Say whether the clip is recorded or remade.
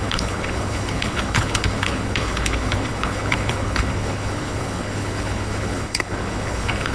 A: remade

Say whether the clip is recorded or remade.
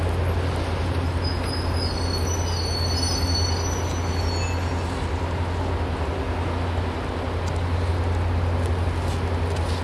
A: recorded